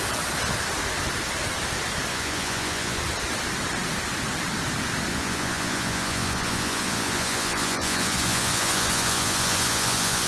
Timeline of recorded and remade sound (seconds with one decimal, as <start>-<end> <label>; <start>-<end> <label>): 0.0-2.1 recorded; 2.1-3.0 remade; 3.0-5.1 recorded; 5.1-10.3 remade